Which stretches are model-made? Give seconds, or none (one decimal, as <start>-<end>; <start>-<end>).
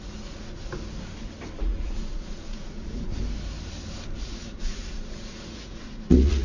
0.0-0.6; 1.6-3.1; 4.2-6.4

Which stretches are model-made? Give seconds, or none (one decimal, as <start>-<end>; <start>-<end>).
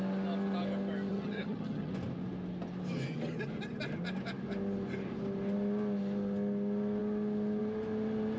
1.1-1.9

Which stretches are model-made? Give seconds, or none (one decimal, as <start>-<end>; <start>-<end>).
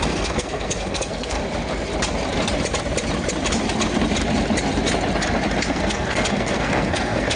0.0-1.4; 5.7-7.4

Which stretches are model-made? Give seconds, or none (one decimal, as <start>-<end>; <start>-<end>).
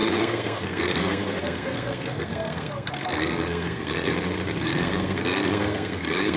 0.0-4.1; 4.6-6.4